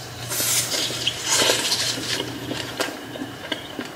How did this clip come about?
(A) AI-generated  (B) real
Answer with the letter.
A